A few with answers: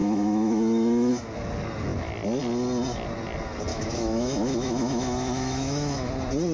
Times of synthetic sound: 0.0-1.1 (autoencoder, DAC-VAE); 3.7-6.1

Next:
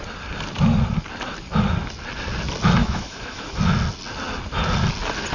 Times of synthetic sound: 2.8-3.6 (autoencoder, DAC-VAE)

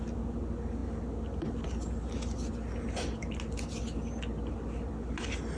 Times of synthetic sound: none